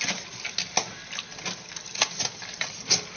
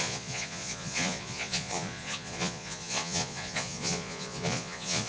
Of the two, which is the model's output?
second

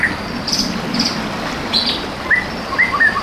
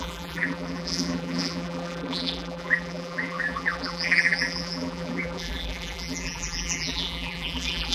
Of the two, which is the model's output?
second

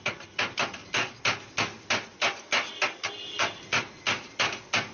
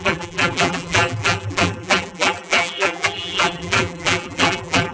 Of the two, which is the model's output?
second